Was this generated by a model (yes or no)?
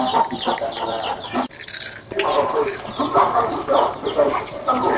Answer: no